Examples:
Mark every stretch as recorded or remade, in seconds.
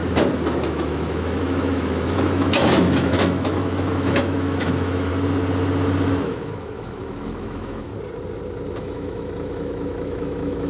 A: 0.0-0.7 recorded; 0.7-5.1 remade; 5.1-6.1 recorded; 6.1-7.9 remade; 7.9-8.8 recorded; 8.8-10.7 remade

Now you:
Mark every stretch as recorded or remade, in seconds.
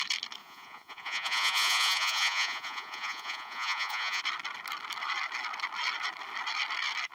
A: 0.0-0.4 recorded; 0.4-4.2 remade; 4.2-7.1 recorded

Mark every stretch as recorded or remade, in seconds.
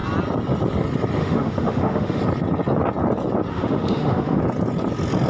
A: 0.0-1.2 recorded; 1.2-2.2 remade; 2.2-3.5 recorded; 3.5-4.4 remade; 4.4-5.3 recorded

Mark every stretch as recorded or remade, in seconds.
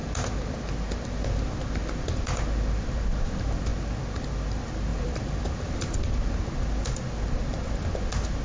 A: 0.0-4.9 recorded; 4.9-6.0 remade; 6.0-8.4 recorded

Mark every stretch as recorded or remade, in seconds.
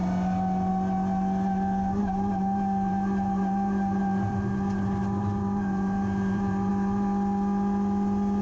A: 0.0-2.0 recorded; 2.0-6.7 remade; 6.7-8.4 recorded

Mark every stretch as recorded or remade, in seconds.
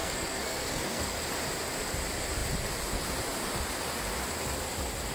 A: 0.0-1.3 remade; 1.3-5.1 recorded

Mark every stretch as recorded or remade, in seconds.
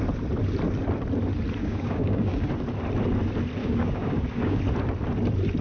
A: 0.0-1.6 recorded; 1.6-2.5 remade; 2.5-3.6 recorded; 3.6-4.6 remade; 4.6-5.6 recorded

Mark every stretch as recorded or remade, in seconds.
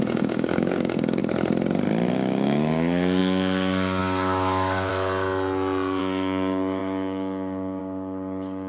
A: 0.0-1.2 remade; 1.2-2.1 recorded; 2.1-4.9 remade; 4.9-6.0 recorded; 6.0-8.7 remade